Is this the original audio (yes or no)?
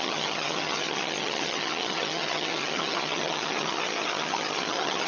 no